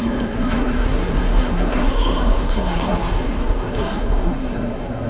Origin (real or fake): fake